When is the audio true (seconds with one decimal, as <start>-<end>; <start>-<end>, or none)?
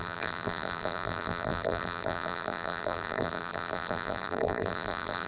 none